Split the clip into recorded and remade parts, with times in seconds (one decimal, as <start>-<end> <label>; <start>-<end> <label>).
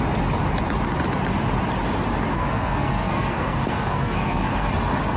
0.0-2.3 recorded; 2.3-4.7 remade; 4.7-5.2 recorded